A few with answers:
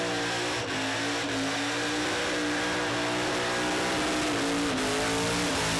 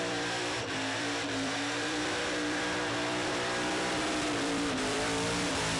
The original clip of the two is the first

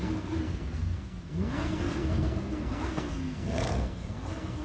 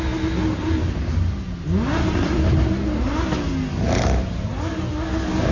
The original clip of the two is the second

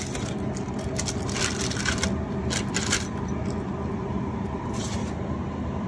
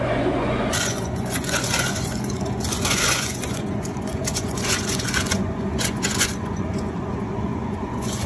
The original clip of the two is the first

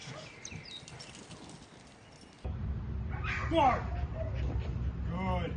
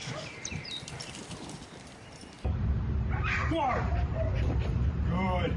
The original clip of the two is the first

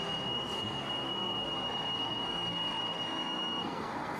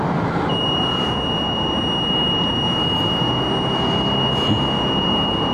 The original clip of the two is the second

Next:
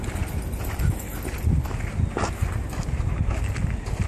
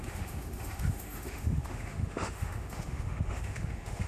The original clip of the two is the first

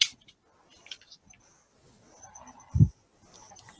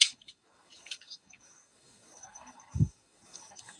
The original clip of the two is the first